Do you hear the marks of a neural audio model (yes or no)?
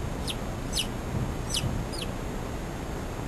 no